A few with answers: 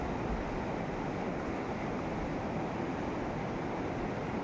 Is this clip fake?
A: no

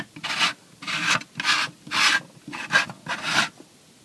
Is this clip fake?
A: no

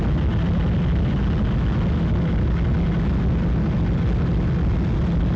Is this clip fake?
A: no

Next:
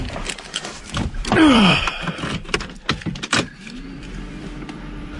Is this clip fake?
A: yes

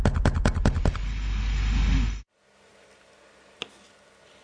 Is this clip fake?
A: no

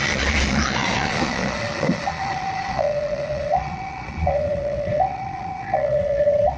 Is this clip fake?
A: yes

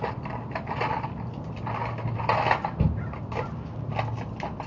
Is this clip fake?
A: no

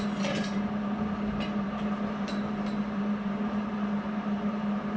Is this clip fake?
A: yes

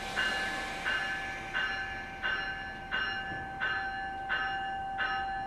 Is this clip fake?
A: no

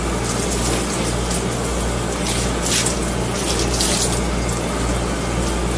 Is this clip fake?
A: no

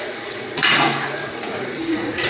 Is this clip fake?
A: yes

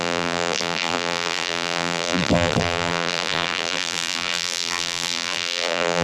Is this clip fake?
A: yes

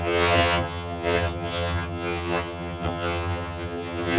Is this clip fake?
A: yes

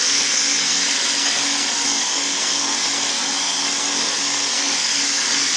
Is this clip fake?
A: yes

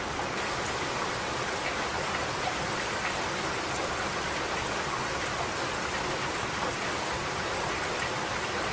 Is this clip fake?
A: no